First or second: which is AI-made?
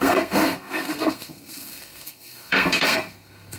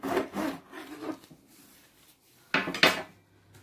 first